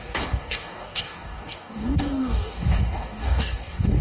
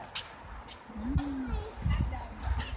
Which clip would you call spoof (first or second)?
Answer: first